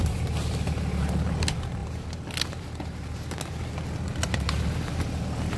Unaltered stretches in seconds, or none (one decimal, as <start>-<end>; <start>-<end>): 0.0-5.6